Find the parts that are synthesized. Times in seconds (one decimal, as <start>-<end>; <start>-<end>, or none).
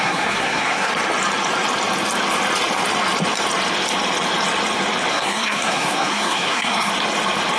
0.0-0.9; 5.1-6.9